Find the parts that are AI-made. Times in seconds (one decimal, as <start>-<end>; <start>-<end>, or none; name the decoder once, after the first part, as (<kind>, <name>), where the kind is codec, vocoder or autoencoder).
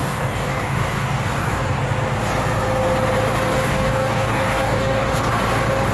0.0-1.8 (codec, DAC); 3.5-5.3